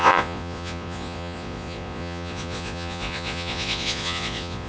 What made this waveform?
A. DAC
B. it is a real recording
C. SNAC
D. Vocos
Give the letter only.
D